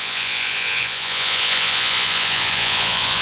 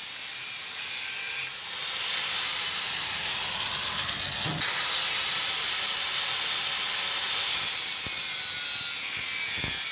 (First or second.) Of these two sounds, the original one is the second